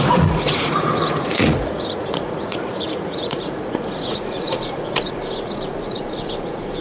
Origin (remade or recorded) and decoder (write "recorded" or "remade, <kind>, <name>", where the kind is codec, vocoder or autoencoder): remade, vocoder, Vocos